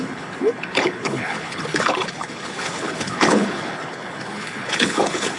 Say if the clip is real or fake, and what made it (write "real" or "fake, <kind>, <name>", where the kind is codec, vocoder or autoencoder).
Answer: fake, codec, HILCodec